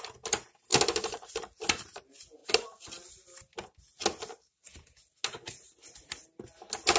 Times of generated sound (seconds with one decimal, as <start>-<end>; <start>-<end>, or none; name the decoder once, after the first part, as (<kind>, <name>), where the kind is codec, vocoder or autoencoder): none